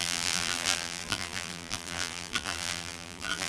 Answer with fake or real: fake